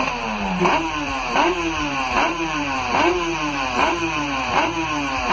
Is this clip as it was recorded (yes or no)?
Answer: no